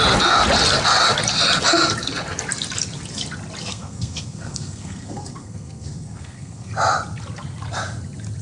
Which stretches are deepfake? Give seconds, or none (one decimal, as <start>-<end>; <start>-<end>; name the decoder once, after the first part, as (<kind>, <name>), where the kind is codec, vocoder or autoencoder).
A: 3.7-6.7 (codec, SNAC)

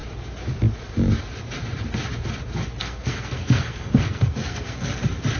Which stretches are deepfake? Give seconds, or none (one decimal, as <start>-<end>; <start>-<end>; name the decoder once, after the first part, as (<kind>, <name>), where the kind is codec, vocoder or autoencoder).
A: 2.8-5.0 (codec, SNAC)

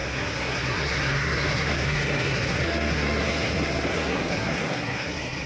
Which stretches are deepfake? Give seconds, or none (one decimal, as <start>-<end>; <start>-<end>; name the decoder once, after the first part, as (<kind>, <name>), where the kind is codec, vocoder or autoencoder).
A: 0.0-5.5 (codec, SNAC)

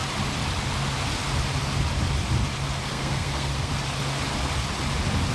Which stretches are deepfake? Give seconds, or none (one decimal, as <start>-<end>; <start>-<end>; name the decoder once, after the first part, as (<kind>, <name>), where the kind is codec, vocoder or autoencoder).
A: 2.8-3.7 (codec, SNAC)

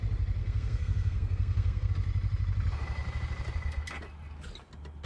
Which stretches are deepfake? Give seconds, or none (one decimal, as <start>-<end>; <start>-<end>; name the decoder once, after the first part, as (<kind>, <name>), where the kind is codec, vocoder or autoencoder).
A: 0.4-1.9 (codec, SNAC)

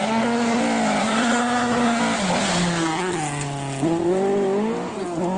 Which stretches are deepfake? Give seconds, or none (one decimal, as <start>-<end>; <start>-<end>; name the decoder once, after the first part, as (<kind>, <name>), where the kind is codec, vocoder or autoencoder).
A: 0.0-0.6 (codec, SNAC); 1.0-2.0